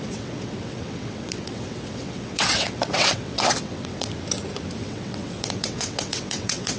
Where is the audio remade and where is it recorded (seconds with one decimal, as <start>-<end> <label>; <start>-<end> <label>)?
0.0-4.1 remade; 4.1-4.8 recorded; 4.8-6.8 remade